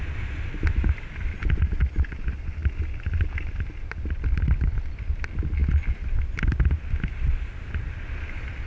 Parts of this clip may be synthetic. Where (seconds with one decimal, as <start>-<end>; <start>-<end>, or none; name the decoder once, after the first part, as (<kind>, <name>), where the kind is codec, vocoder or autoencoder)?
none